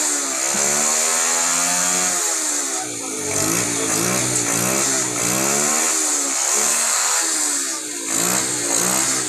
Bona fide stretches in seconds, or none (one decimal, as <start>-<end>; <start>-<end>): 0.0-6.5; 7.2-9.3